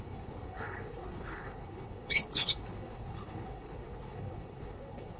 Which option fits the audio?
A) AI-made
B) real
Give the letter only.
A